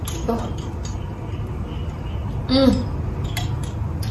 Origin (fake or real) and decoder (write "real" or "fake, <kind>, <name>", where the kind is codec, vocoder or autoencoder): real